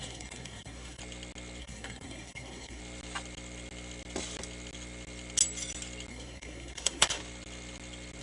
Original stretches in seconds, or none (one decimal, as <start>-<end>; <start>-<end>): 1.0-1.6; 2.8-6.1; 7.2-8.2